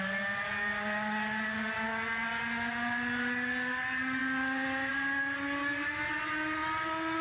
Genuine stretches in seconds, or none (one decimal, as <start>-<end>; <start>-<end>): 0.0-7.2